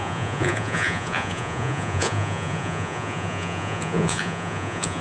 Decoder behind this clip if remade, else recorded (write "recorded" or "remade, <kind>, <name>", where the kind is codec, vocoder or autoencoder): remade, vocoder, Vocos